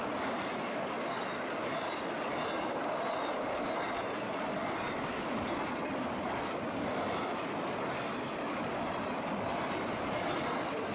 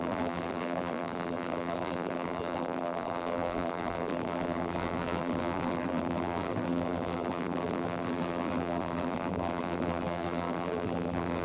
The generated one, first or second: second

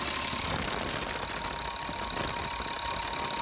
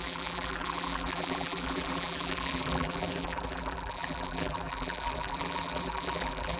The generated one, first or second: second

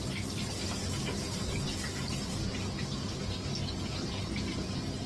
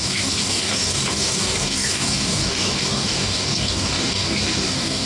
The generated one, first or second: second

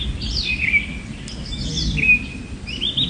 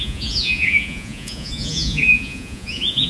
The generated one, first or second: second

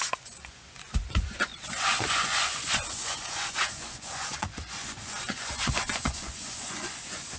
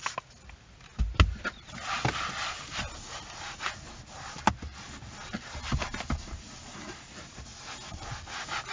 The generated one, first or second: first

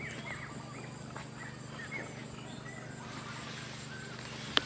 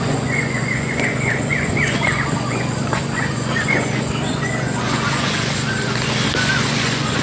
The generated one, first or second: second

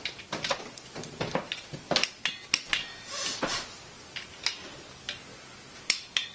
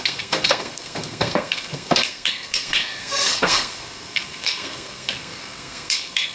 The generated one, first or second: second